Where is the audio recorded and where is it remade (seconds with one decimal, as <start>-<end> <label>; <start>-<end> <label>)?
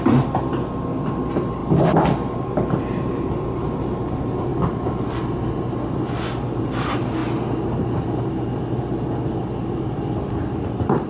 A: 0.0-11.1 recorded